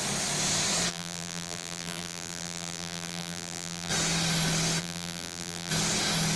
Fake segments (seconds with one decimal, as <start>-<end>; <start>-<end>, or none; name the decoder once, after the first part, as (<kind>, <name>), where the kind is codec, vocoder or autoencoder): 0.9-3.9 (vocoder, BigVGAN v2); 4.8-5.7